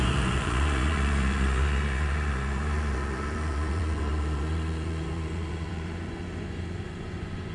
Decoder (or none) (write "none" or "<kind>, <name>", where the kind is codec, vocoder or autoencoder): vocoder, Vocos